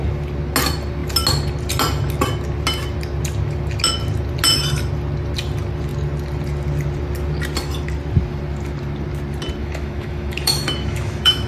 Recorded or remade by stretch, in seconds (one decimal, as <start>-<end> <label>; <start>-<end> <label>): 0.0-9.6 recorded; 9.6-11.5 remade